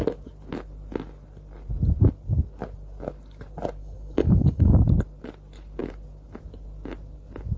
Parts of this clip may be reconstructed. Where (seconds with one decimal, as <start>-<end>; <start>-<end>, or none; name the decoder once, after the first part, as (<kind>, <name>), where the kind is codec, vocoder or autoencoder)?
3.8-4.8 (codec, DAC)